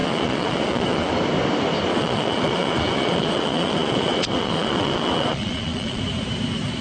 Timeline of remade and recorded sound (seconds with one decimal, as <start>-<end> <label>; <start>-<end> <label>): 0.0-1.1 remade; 1.1-1.9 recorded; 1.9-6.0 remade; 6.0-6.8 recorded